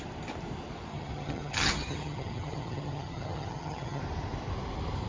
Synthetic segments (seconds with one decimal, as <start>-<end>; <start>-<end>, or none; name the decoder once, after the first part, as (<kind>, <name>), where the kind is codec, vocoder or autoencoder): 0.9-4.0 (vocoder, HiFi-GAN)